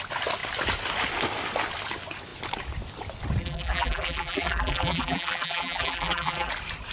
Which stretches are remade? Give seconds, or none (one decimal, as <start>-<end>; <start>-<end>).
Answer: 3.4-6.5